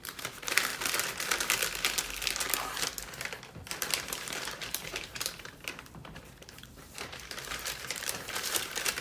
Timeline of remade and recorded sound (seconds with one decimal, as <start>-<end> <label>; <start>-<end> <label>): 0.0-0.7 remade; 0.7-3.7 recorded; 3.7-9.0 remade